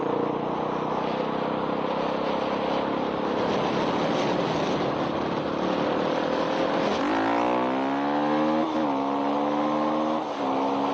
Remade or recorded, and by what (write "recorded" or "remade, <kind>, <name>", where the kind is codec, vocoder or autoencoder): recorded